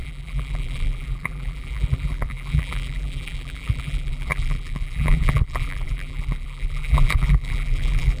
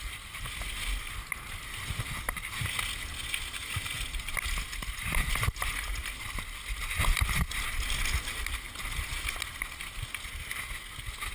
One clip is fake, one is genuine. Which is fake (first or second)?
first